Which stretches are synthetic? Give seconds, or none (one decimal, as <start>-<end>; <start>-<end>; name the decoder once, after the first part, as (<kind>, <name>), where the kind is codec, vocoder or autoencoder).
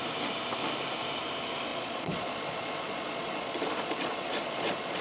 1.7-5.0 (vocoder, Vocos)